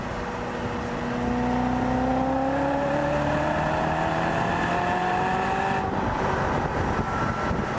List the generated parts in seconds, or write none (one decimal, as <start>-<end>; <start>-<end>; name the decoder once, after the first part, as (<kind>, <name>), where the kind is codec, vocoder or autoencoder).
2.1-5.9 (vocoder, BigVGAN v2)